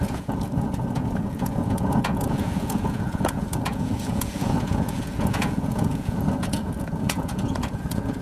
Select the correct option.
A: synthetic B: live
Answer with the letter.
A